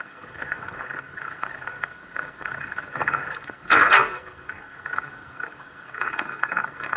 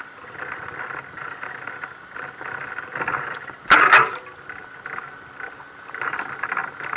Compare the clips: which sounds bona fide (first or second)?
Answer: second